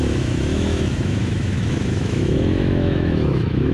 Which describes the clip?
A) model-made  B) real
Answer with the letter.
A